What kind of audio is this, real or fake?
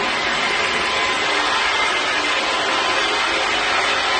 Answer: real